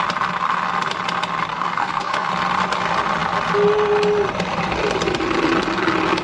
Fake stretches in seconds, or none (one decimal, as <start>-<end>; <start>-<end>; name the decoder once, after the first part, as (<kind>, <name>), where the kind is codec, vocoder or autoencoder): 1.5-2.3 (codec, SNAC)